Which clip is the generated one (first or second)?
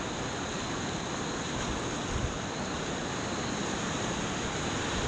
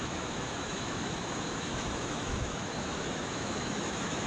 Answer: second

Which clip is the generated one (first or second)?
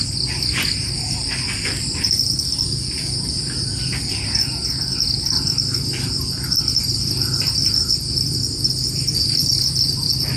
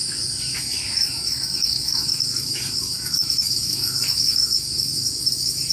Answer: second